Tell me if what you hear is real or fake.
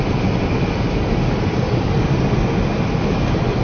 real